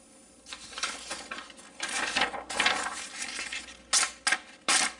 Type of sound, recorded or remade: recorded